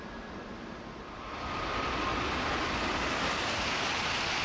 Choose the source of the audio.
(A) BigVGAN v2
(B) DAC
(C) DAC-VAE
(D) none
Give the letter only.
D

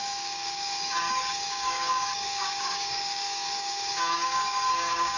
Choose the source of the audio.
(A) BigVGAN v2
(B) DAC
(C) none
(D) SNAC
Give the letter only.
B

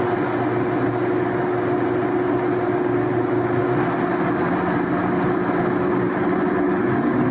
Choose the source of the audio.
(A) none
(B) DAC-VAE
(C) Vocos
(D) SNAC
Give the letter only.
A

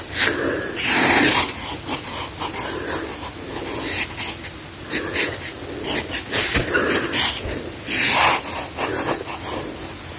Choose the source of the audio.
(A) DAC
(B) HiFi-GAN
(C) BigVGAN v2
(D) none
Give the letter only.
D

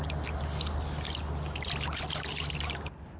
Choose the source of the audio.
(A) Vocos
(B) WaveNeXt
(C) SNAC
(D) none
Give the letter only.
D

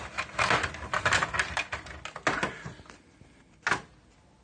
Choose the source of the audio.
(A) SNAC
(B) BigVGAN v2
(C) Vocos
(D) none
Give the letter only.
D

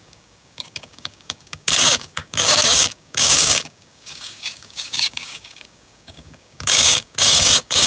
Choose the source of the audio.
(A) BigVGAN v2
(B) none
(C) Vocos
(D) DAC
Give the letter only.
D